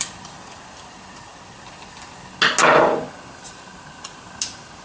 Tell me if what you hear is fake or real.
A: real